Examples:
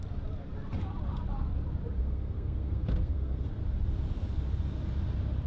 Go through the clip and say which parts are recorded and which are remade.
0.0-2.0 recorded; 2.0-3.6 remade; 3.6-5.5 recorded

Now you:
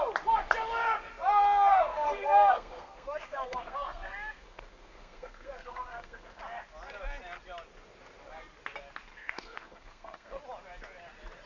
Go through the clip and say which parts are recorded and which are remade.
0.0-1.7 recorded; 1.7-6.4 remade; 6.4-9.1 recorded; 9.1-10.4 remade; 10.4-11.5 recorded

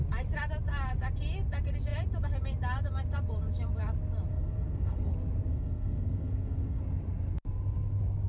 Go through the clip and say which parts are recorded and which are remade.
0.0-4.3 recorded; 4.3-5.1 remade; 5.1-5.5 recorded; 5.5-6.8 remade; 6.8-8.3 recorded